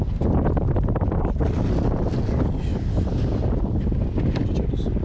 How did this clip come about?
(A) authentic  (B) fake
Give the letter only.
A